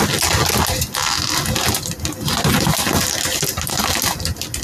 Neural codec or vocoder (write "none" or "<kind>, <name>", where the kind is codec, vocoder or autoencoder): none